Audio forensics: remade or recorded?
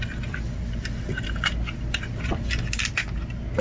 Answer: recorded